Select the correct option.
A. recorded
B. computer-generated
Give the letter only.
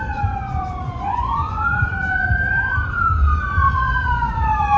B